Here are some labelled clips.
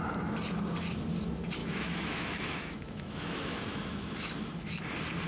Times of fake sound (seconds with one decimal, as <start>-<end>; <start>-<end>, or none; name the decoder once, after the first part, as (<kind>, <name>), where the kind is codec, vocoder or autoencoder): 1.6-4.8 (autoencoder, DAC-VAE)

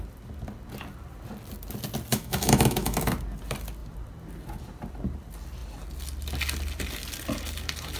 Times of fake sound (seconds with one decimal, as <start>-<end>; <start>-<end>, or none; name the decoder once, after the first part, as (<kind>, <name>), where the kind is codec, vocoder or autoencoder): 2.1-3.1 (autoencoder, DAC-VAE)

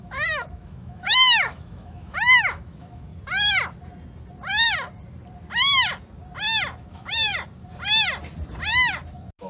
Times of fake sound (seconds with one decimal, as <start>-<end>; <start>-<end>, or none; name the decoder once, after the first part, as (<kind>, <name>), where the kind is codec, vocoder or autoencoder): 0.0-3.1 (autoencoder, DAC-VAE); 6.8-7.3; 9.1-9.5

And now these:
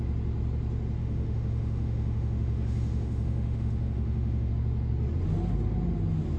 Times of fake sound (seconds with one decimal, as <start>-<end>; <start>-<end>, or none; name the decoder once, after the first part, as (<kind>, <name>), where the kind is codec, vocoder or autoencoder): 1.0-4.5 (autoencoder, DAC-VAE)